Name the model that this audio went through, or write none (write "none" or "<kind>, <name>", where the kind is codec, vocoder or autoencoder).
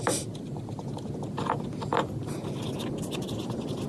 none